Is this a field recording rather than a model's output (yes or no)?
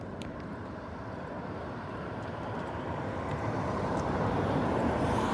no